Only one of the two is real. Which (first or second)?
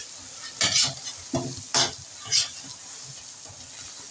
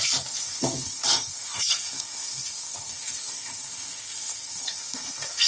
first